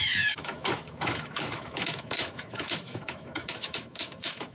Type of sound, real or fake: fake